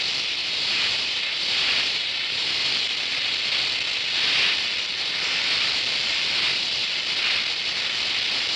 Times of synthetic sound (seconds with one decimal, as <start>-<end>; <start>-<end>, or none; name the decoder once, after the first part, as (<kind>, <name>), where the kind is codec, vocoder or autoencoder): 0.4-2.8 (vocoder, BigVGAN v2)